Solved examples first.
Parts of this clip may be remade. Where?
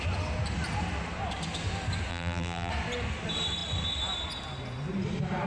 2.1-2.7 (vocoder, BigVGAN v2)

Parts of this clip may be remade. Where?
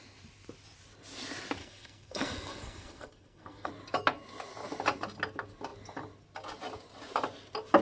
1.6-3.7 (codec, SNAC)